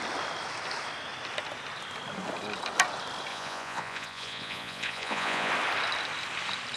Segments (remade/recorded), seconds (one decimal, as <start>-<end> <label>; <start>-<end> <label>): 0.0-3.3 recorded; 3.3-5.5 remade; 5.5-6.8 recorded